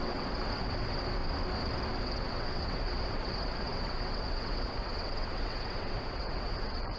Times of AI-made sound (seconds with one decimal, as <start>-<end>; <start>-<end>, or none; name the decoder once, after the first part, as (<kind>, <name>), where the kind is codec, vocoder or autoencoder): 0.0-1.2 (vocoder, WaveNeXt); 2.0-7.0